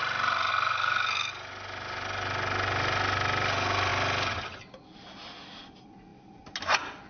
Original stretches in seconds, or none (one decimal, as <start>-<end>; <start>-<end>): 0.0-0.5; 1.3-7.1